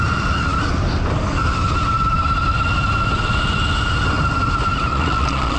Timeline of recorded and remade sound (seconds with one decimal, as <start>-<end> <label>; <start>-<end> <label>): 0.0-4.9 recorded; 4.9-5.6 remade